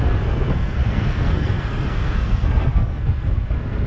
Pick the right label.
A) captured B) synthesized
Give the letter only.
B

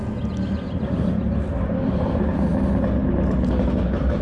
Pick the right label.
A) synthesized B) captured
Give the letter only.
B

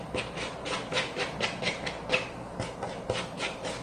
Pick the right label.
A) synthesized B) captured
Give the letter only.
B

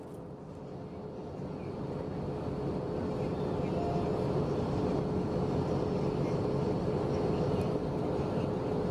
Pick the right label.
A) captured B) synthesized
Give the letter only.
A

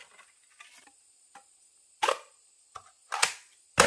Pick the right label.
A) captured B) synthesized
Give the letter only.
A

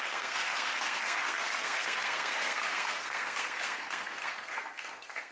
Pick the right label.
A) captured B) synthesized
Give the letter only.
B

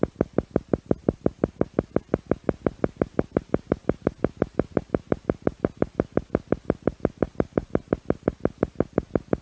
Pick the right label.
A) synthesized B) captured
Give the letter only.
B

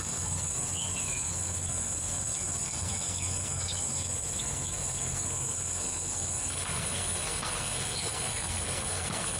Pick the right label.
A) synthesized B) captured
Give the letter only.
A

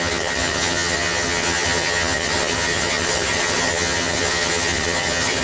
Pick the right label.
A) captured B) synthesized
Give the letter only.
B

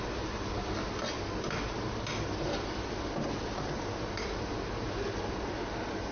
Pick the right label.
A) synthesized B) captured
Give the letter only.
B